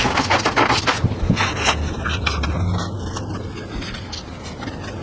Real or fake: real